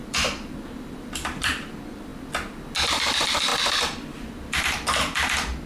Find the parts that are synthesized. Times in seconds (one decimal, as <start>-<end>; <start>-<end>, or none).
0.0-2.1; 2.9-5.7